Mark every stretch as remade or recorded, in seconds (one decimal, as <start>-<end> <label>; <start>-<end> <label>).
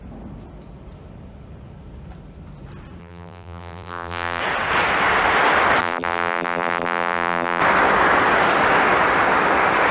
0.0-3.0 recorded; 3.0-4.4 remade; 4.4-5.8 recorded; 5.8-7.6 remade; 7.6-9.9 recorded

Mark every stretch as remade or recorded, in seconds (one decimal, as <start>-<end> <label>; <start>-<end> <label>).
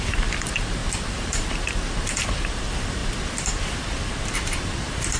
0.0-0.8 remade; 0.8-2.5 recorded; 2.5-5.2 remade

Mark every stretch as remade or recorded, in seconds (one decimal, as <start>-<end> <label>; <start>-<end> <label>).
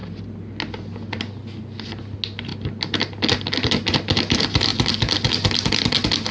0.0-2.5 recorded; 2.5-3.2 remade; 3.2-6.3 recorded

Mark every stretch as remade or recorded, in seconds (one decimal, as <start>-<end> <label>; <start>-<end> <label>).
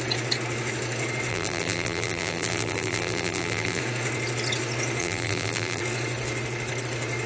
0.0-1.3 recorded; 1.3-3.8 remade; 3.8-5.0 recorded; 5.0-5.8 remade; 5.8-7.3 recorded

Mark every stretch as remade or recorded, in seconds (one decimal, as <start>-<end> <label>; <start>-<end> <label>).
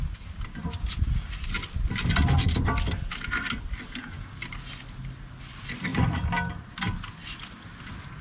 0.0-8.2 recorded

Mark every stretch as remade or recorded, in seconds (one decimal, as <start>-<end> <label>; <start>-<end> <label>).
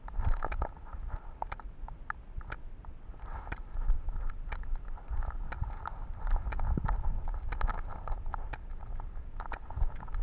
0.0-10.2 recorded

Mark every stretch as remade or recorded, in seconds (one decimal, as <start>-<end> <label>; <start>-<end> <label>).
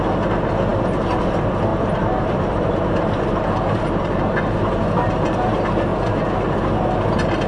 0.0-1.7 recorded; 1.7-3.8 remade; 3.8-7.5 recorded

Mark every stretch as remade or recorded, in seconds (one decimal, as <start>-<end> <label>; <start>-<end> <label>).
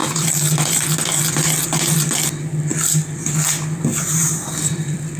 0.0-0.8 remade; 0.8-2.7 recorded; 2.7-3.3 remade; 3.3-3.9 recorded; 3.9-5.2 remade